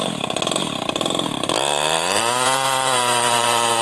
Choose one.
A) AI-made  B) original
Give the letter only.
A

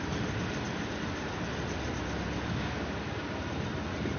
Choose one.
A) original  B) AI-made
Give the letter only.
B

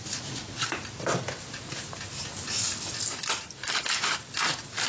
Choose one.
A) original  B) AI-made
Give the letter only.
A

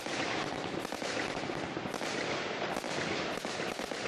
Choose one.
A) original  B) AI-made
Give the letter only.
A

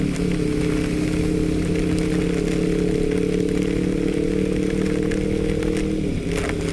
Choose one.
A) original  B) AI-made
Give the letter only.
A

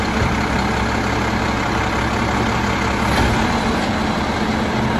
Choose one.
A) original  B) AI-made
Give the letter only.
A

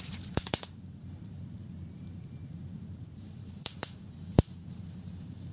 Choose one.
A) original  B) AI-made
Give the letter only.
B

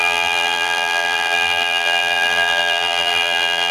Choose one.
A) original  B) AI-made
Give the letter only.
B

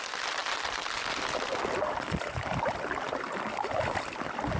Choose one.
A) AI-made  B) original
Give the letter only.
A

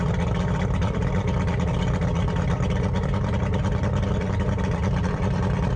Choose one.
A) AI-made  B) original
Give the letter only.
A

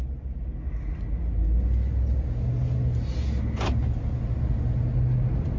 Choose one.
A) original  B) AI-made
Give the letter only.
A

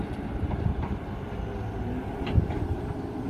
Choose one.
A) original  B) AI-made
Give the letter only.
A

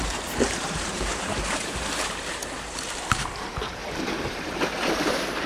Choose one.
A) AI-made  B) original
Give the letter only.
A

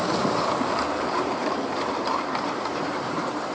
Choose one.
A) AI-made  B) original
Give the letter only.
A